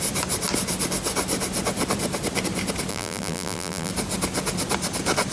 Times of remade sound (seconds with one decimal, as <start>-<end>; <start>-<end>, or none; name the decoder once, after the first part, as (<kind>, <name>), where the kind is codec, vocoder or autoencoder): 2.9-3.9 (vocoder, BigVGAN v2)